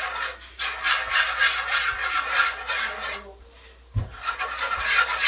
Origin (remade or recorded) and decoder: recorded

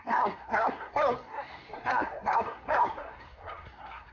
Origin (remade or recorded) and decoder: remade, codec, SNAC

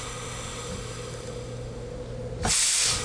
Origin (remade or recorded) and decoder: recorded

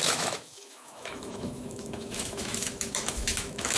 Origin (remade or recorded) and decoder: remade, autoencoder, DAC-VAE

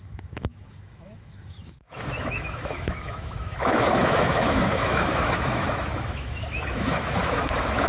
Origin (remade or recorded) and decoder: remade, autoencoder, DAC-VAE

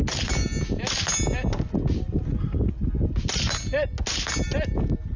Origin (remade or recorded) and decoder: recorded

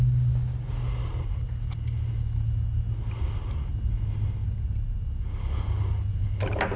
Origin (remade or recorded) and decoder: recorded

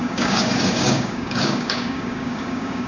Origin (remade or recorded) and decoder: remade, codec, DAC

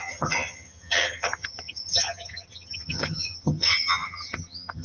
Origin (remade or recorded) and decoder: remade, vocoder, HiFi-GAN